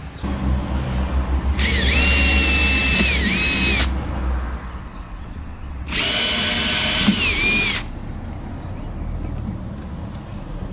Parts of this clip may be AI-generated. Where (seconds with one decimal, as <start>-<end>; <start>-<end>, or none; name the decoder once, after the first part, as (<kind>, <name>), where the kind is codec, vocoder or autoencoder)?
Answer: 4.9-6.0 (vocoder, WaveNeXt)